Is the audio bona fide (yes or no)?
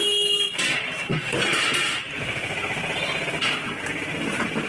yes